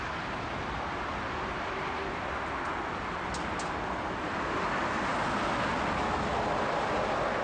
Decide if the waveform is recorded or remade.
recorded